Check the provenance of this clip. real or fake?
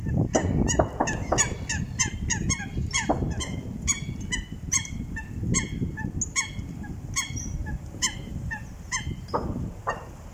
real